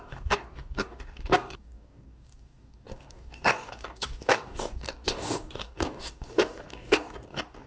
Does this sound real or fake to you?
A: fake